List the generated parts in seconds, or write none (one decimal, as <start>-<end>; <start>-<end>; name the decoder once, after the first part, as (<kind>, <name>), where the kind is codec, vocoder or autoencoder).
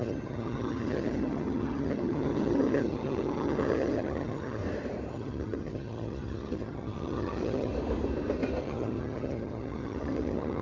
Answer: 0.0-4.6 (vocoder, HiFi-GAN); 5.1-7.7; 8.6-10.6